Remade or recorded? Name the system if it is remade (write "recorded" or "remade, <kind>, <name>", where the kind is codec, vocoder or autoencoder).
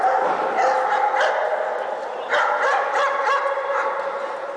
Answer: recorded